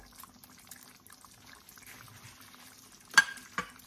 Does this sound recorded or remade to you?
recorded